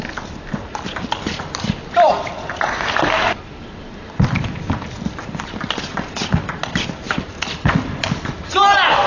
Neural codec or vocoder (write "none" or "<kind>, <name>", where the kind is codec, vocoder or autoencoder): none